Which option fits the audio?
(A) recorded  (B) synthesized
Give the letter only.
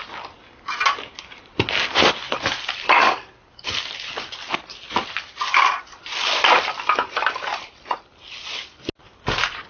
A